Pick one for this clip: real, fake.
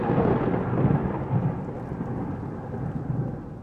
real